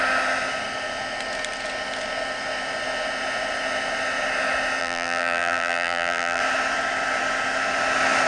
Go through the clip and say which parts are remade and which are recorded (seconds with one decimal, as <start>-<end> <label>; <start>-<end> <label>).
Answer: 0.0-4.8 recorded; 4.8-6.4 remade; 6.4-8.3 recorded